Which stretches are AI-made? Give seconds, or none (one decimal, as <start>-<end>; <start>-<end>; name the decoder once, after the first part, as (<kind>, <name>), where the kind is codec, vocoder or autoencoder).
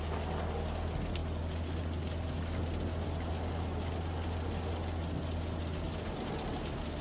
none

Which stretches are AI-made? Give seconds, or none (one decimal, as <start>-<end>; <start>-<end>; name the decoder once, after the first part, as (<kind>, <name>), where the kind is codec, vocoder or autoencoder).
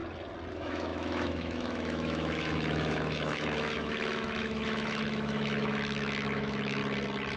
0.5-6.8 (autoencoder, DAC-VAE)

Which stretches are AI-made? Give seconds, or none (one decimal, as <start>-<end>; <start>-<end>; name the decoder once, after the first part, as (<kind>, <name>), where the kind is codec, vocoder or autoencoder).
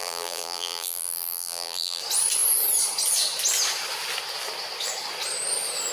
0.0-2.0 (vocoder, BigVGAN v2)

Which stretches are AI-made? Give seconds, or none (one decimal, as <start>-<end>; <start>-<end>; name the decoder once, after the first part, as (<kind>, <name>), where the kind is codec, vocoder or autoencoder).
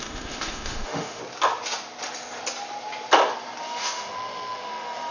0.0-1.2 (autoencoder, DAC-VAE); 3.6-5.1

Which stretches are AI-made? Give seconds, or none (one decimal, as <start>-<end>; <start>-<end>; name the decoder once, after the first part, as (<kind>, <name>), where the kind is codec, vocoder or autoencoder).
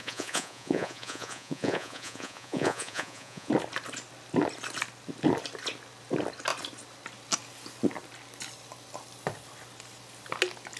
0.0-3.5 (vocoder, Vocos)